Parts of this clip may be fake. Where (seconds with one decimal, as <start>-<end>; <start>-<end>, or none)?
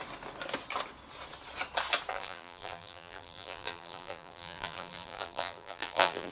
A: 2.1-6.3